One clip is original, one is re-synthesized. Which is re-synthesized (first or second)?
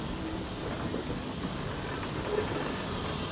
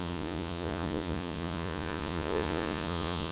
second